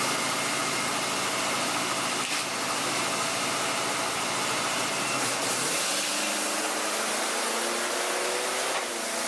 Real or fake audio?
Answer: real